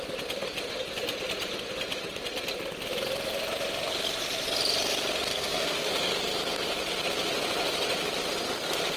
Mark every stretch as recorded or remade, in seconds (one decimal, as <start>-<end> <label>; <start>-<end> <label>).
0.0-5.3 recorded; 5.3-5.9 remade; 5.9-9.0 recorded